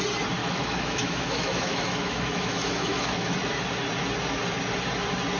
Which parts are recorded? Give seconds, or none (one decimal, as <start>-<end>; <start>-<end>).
0.0-0.4; 3.6-5.4